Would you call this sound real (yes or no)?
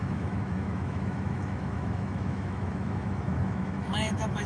no